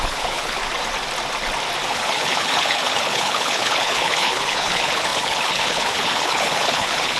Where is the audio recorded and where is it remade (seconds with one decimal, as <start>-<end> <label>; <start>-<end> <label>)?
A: 0.0-0.6 remade; 0.6-1.9 recorded; 1.9-7.2 remade